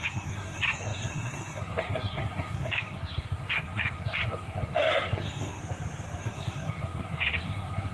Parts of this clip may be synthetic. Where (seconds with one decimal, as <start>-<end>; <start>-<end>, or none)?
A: 0.0-5.6; 6.2-7.9